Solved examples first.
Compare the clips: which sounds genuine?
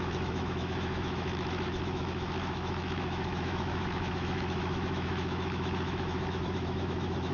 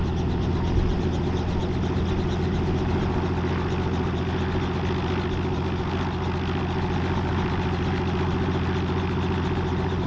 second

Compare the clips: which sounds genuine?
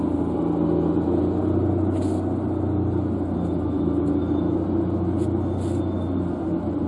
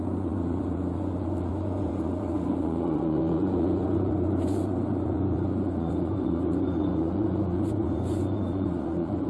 first